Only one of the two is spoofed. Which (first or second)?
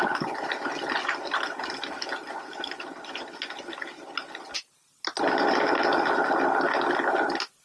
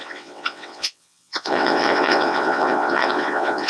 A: second